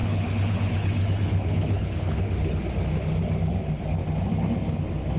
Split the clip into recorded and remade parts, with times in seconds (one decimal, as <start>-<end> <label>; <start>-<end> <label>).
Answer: 0.0-2.6 remade; 2.6-5.2 recorded